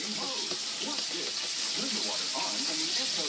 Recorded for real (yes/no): yes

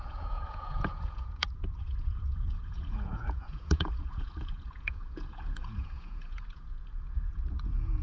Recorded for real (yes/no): no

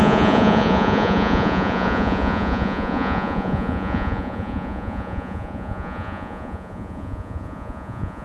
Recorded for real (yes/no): no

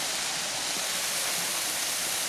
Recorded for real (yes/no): yes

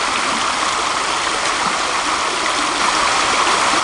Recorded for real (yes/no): yes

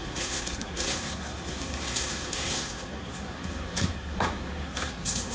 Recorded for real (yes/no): no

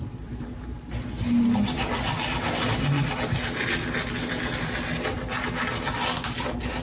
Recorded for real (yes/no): yes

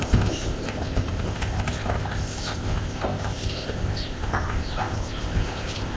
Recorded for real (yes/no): no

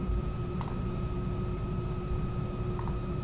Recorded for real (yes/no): yes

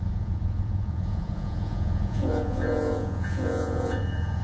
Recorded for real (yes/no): no